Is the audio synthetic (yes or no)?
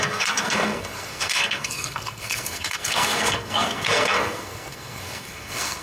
yes